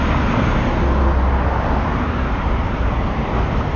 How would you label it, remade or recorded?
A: recorded